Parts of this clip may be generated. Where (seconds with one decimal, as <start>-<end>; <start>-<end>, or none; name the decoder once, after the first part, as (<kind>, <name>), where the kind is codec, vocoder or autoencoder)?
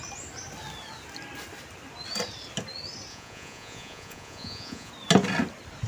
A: 3.1-4.9 (vocoder, Vocos)